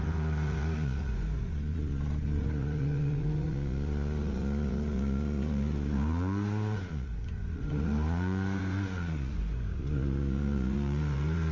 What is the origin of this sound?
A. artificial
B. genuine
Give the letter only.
A